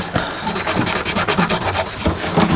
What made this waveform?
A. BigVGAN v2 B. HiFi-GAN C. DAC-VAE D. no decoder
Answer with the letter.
D